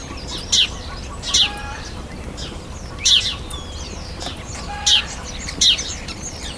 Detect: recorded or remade remade